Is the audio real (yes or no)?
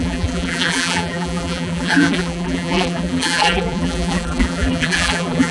no